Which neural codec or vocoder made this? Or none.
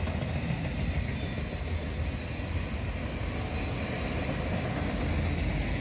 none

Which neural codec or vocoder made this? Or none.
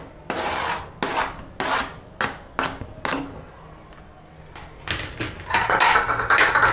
none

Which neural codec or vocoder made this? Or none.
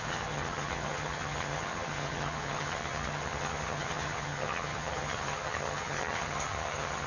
vocoder, HiFi-GAN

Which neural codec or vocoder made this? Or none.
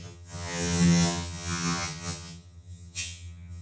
vocoder, HiFi-GAN